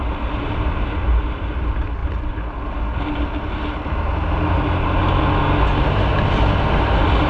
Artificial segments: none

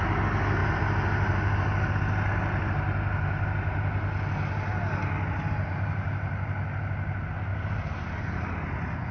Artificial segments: none

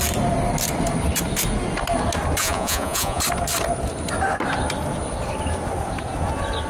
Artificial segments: 2.4-3.2 (vocoder, Vocos)

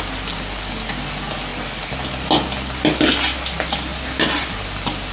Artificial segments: none